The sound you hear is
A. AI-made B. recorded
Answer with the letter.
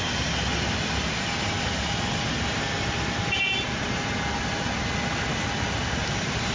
B